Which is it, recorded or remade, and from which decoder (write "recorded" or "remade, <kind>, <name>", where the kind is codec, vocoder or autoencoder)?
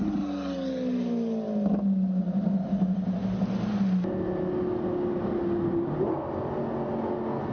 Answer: recorded